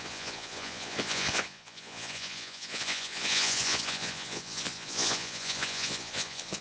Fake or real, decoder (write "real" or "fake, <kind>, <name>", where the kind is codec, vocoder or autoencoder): fake, vocoder, Vocos